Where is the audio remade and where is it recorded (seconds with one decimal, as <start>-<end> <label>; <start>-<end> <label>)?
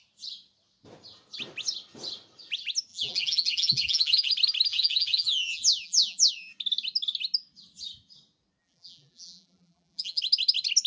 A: 0.0-2.9 recorded; 2.9-4.3 remade; 4.3-4.7 recorded; 4.7-6.3 remade; 6.3-8.6 recorded; 8.6-10.2 remade; 10.2-10.9 recorded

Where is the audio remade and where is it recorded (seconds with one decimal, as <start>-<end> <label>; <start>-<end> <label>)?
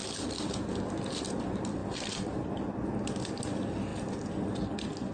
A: 0.0-1.8 recorded; 1.8-2.9 remade; 2.9-3.9 recorded; 3.9-5.1 remade